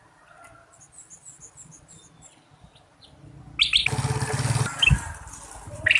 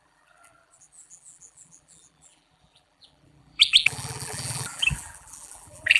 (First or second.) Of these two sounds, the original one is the first